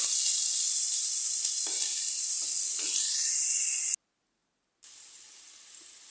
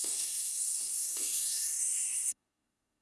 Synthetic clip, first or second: second